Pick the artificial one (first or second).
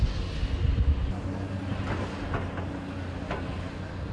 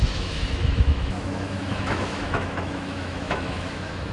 second